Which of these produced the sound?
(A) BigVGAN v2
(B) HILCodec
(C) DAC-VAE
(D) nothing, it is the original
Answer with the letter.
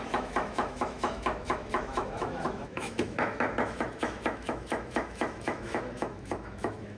C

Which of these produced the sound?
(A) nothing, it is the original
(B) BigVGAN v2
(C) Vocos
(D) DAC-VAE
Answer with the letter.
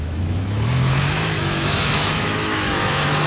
D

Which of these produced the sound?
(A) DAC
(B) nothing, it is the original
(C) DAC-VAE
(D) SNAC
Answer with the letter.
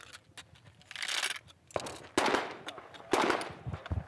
B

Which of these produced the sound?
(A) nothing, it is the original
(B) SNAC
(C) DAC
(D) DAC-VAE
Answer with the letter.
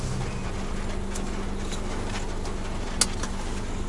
A